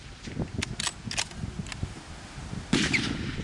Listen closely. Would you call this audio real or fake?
real